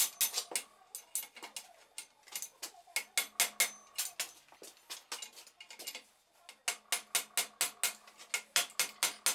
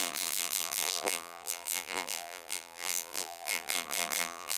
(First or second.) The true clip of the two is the first